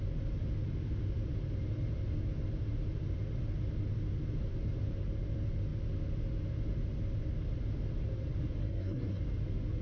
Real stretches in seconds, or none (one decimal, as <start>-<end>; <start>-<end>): 0.0-8.6; 9.2-9.8